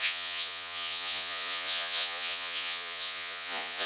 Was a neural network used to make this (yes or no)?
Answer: yes